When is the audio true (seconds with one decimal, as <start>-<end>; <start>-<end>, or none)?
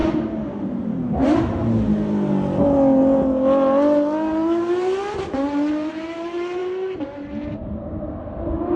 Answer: 1.2-5.9